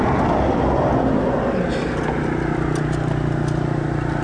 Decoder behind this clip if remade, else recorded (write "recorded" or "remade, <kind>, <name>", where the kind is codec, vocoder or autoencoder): recorded